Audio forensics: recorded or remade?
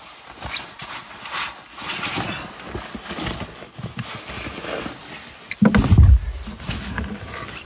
recorded